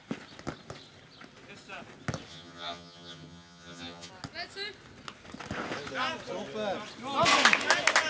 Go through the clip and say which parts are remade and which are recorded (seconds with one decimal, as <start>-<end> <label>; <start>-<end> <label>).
0.0-2.3 recorded; 2.3-4.1 remade; 4.1-8.1 recorded